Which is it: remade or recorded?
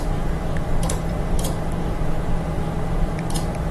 remade